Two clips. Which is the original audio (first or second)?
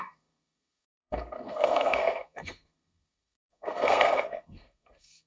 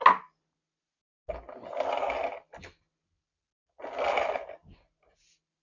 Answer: second